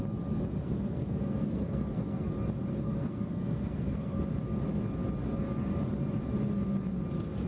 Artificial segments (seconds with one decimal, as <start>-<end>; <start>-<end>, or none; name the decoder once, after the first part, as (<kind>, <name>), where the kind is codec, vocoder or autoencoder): 0.6-2.3 (codec, SNAC); 2.7-4.2